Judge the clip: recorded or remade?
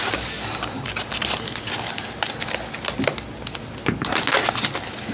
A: recorded